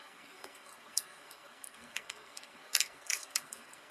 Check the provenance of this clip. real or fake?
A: fake